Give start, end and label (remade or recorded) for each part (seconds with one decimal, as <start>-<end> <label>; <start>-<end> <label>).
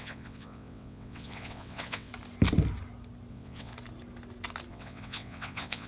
0.0-2.1 remade; 2.1-3.3 recorded; 3.3-3.7 remade; 3.7-4.7 recorded; 4.7-5.9 remade